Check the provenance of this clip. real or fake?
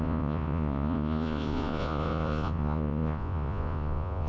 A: fake